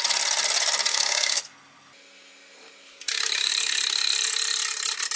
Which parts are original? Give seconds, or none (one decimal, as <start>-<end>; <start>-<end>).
0.0-0.9; 1.4-2.9; 3.5-5.2